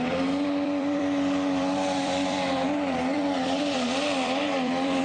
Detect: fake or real fake